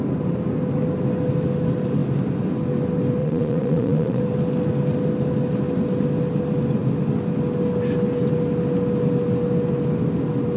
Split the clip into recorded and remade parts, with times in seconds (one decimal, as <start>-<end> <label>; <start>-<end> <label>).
0.0-3.2 recorded; 3.2-4.2 remade; 4.2-10.6 recorded